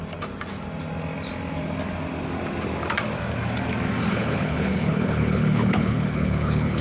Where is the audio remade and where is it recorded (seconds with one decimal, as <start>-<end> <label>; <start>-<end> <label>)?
0.0-4.1 recorded; 4.1-6.8 remade